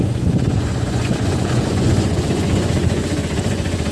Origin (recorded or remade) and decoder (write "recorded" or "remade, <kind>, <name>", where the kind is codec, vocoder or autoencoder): remade, vocoder, Vocos